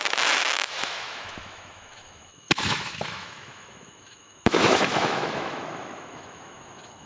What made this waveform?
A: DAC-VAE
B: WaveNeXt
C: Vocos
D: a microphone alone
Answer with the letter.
A